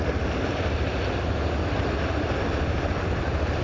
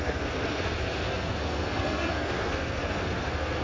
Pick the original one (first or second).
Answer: first